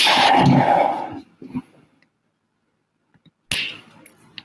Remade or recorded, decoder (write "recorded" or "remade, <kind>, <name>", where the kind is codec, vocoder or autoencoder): recorded